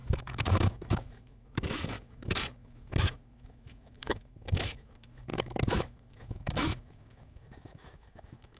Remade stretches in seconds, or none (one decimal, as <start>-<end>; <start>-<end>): 0.0-8.6